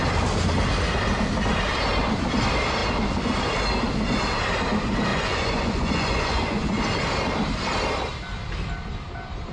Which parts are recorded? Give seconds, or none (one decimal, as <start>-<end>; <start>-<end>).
0.0-5.1; 6.8-9.5